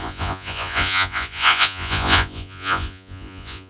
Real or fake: fake